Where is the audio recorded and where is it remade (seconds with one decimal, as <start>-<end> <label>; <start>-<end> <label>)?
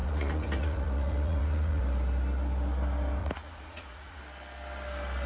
0.0-1.8 remade; 1.8-3.2 recorded; 3.2-4.2 remade; 4.2-5.3 recorded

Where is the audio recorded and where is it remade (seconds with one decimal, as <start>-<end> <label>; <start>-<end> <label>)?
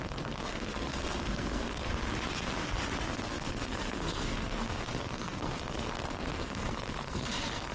0.0-1.9 remade; 1.9-3.1 recorded; 3.1-7.7 remade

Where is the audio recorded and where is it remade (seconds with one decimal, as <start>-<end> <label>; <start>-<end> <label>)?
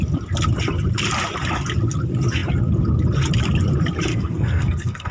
0.0-4.1 recorded; 4.1-5.1 remade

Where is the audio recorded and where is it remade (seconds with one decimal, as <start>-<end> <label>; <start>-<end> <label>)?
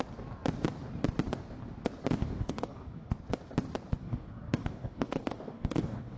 0.0-2.2 recorded; 2.2-3.1 remade; 3.1-4.0 recorded; 4.0-6.2 remade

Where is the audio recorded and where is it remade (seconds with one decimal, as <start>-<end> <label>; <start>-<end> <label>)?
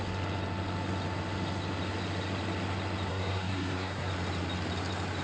0.0-3.1 recorded; 3.1-4.1 remade; 4.1-5.2 recorded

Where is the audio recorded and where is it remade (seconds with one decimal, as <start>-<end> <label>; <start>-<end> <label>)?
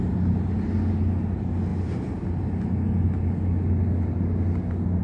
0.0-5.0 recorded